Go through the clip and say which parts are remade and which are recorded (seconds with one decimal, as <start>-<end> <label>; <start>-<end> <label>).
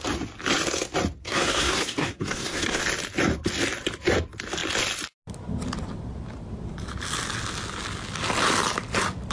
0.0-1.2 recorded; 1.2-2.8 remade; 2.8-9.3 recorded